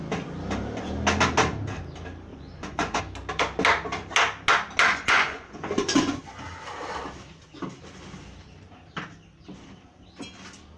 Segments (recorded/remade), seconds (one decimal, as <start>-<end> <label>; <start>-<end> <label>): 0.0-2.3 recorded; 2.3-3.0 remade; 3.0-4.9 recorded; 4.9-6.2 remade; 6.2-10.8 recorded